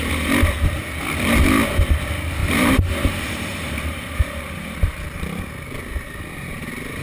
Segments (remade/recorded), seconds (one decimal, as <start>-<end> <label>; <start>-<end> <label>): 0.0-2.4 recorded; 2.4-5.4 remade; 5.4-7.0 recorded